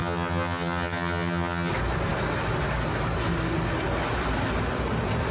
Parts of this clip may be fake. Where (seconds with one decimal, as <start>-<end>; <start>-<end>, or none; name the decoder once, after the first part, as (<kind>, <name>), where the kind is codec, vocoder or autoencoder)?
0.0-1.7 (vocoder, HiFi-GAN)